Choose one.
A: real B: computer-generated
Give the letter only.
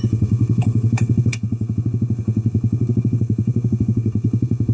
B